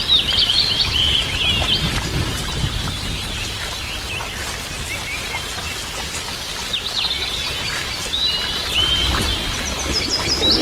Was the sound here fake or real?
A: real